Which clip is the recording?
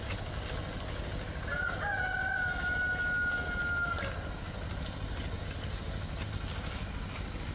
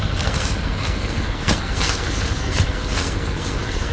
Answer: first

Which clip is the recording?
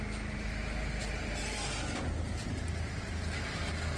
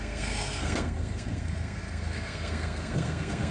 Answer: first